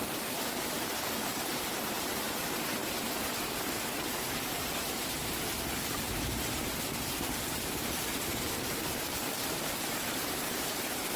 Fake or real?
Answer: fake